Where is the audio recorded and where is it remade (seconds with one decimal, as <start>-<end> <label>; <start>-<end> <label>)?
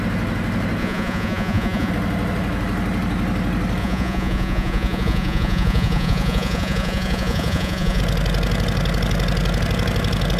0.0-0.8 recorded; 0.8-1.9 remade; 1.9-3.8 recorded; 3.8-8.0 remade; 8.0-10.4 recorded